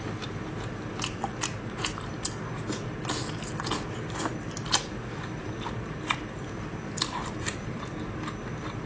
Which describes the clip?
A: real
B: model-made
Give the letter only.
A